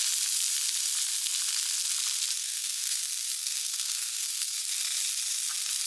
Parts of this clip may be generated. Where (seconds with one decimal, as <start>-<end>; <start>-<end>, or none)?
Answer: 2.4-3.0; 3.4-4.6